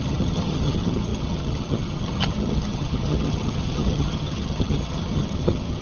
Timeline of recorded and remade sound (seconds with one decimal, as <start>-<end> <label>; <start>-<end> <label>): 0.0-5.8 remade